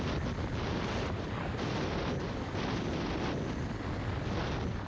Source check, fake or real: real